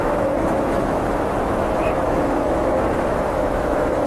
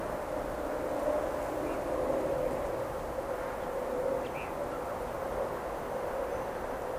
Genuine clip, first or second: second